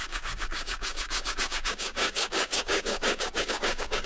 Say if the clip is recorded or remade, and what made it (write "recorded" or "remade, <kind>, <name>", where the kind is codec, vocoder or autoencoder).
remade, codec, DAC